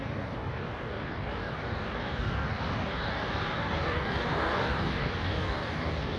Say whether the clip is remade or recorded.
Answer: remade